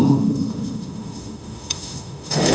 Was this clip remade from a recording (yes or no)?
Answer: yes